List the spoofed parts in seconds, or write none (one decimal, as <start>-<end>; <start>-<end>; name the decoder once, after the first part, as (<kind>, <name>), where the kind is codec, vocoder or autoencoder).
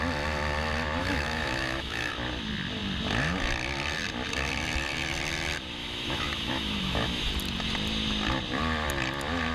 1.0-2.1 (autoencoder, DAC-VAE); 5.8-7.3